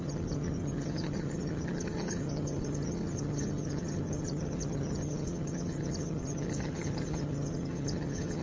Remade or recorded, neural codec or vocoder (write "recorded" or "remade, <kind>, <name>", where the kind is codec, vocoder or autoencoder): remade, vocoder, HiFi-GAN